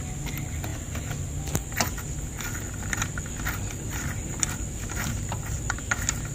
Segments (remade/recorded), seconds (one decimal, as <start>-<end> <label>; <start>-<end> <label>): 0.0-6.3 recorded